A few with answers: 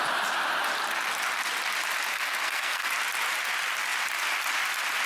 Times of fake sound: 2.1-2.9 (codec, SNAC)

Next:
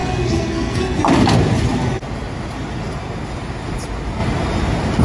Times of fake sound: 0.0-1.0 (codec, SNAC)

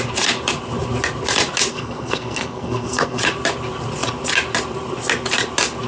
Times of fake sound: 1.7-3.2 (codec, SNAC)

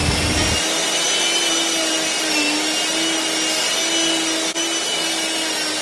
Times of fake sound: none